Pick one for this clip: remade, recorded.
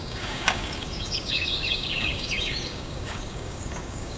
remade